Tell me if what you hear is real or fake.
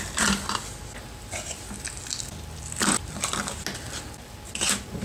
real